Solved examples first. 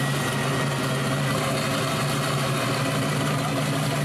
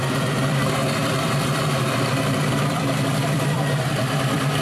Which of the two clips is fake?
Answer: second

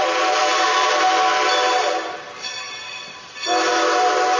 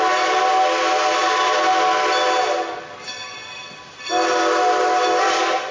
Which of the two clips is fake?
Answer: first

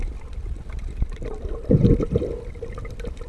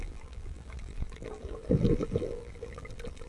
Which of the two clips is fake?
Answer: second